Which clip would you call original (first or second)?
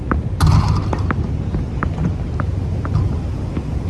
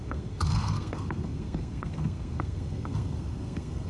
first